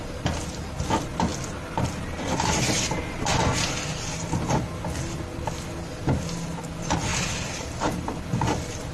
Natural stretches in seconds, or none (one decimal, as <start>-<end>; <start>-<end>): 0.0-7.1; 8.2-8.9